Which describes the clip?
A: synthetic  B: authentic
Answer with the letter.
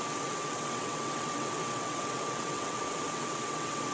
A